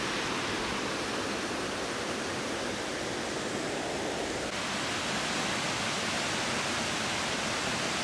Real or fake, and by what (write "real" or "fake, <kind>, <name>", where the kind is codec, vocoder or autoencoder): real